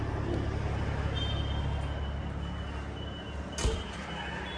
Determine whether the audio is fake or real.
real